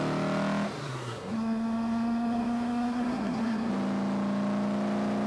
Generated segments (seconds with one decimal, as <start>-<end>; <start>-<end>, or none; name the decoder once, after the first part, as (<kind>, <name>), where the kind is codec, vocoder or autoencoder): 0.8-3.7 (codec, SNAC)